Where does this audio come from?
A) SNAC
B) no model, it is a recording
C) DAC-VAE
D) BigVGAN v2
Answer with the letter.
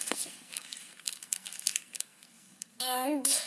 A